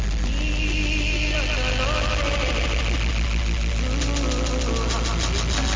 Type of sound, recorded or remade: recorded